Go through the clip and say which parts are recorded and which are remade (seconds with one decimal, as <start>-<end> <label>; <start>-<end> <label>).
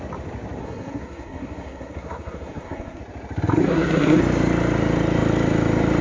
0.0-0.6 recorded; 0.6-3.0 remade; 3.0-3.6 recorded; 3.6-4.2 remade; 4.2-6.0 recorded